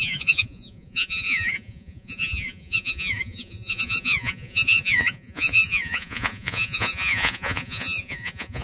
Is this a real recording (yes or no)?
no